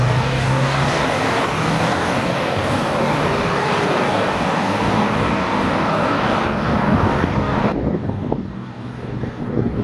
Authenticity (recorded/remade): remade